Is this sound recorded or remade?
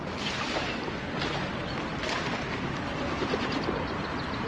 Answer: recorded